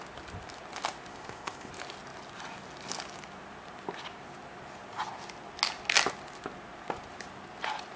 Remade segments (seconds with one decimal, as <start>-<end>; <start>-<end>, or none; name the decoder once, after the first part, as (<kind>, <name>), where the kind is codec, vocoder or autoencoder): 1.1-1.7 (codec, ZipCodec)